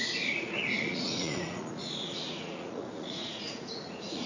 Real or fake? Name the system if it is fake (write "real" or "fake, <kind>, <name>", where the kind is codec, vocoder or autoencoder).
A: fake, vocoder, Vocos